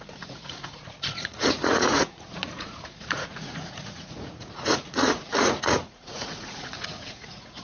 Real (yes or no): no